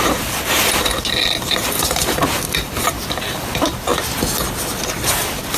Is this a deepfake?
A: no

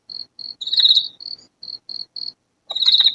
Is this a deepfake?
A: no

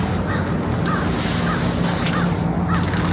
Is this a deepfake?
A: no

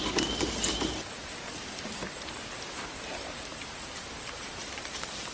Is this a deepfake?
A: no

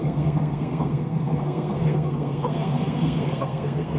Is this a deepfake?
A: yes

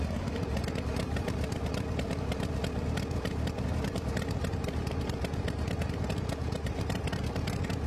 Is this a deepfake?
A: no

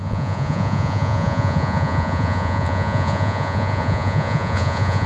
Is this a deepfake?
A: yes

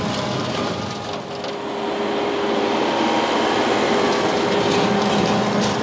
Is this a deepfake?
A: no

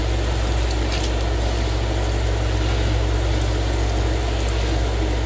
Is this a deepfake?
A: no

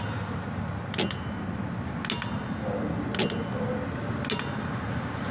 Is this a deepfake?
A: no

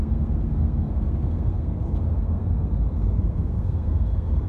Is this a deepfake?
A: yes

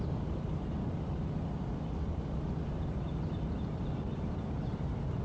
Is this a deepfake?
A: yes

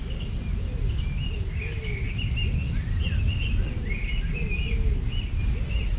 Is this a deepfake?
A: no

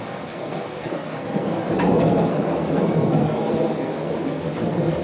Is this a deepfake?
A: yes